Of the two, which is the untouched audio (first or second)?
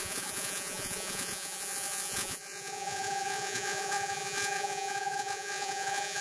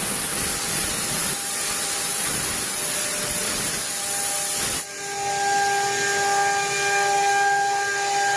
second